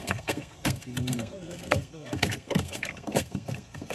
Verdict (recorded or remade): remade